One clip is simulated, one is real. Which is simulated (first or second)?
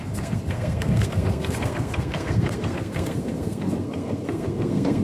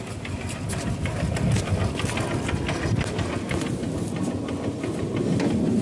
first